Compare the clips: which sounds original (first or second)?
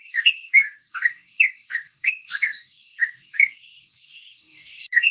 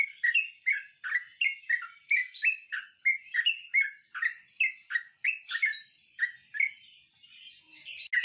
second